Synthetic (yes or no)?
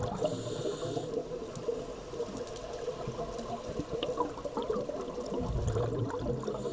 no